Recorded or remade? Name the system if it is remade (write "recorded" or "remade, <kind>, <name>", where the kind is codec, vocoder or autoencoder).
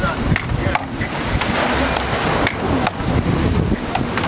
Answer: recorded